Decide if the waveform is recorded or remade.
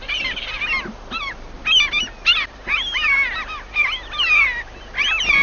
remade